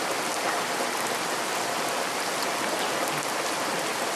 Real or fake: real